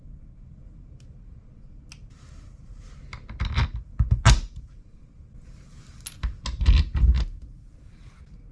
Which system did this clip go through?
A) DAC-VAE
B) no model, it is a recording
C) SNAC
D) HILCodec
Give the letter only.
B